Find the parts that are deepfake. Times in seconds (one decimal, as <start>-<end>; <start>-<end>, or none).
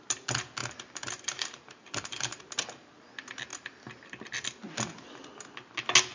0.6-2.4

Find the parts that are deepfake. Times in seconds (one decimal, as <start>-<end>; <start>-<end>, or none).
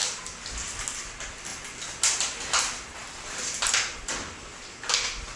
3.0-3.6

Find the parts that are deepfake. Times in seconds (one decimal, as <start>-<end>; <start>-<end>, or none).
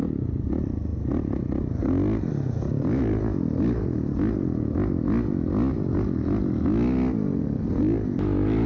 none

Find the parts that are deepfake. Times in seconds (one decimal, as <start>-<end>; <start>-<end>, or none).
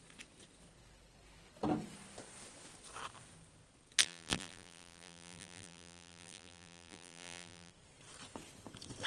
4.0-7.7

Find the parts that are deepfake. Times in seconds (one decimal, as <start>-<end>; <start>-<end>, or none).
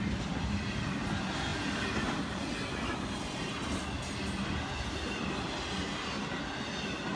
1.5-2.2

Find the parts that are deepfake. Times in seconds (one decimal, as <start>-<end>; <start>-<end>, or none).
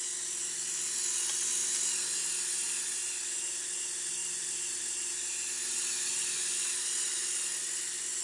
4.2-4.8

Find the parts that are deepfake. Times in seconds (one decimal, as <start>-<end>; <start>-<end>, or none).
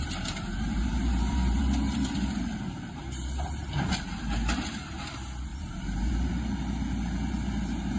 0.0-8.0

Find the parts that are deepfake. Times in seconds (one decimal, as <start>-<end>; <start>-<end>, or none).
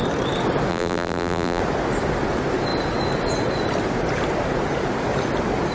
0.7-1.6